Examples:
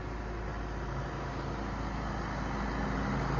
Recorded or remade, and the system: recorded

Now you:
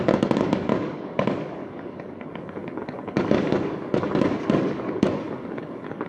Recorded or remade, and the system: remade, codec, DAC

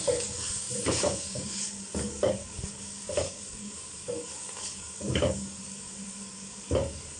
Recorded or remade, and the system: remade, codec, DAC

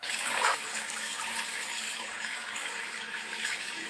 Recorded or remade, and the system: remade, codec, DAC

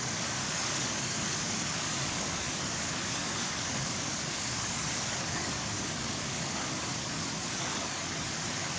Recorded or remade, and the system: remade, codec, DAC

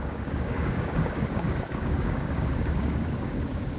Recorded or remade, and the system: remade, codec, DAC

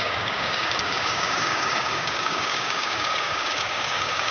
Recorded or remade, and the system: remade, codec, DAC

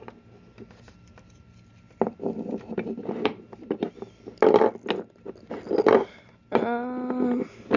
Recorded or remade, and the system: recorded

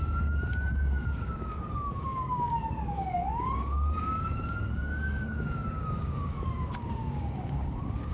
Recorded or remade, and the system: remade, codec, DAC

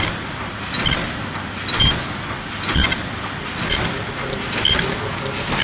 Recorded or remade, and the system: recorded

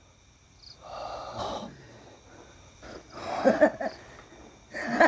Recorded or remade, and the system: recorded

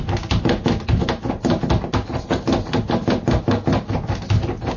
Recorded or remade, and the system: recorded